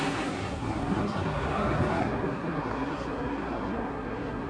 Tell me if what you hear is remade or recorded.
remade